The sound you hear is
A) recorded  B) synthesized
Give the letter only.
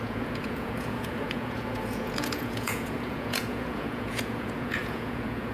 B